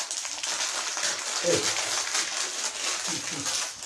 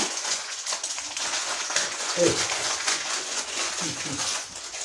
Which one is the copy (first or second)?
second